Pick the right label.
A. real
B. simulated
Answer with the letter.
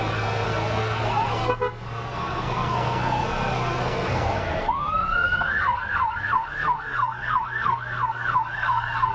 B